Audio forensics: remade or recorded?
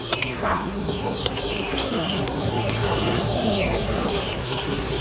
remade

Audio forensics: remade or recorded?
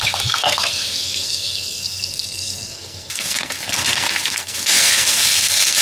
remade